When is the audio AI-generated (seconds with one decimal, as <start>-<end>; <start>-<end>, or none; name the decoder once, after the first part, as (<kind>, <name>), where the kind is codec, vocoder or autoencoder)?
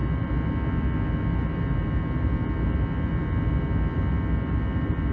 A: none